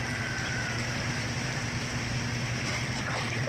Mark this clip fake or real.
fake